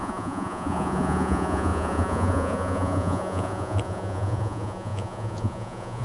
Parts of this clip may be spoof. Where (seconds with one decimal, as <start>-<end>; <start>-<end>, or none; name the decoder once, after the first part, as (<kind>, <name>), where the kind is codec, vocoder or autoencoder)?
0.0-6.0 (vocoder, Vocos)